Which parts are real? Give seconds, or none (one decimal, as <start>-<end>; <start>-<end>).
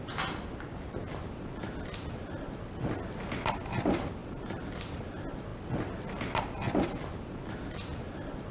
0.0-4.2; 5.0-8.5